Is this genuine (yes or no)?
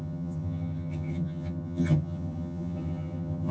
no